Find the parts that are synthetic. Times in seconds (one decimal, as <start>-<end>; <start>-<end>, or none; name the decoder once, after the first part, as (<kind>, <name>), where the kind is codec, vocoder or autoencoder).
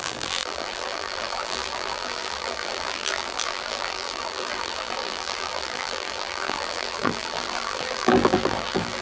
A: 0.0-9.0 (vocoder, BigVGAN v2)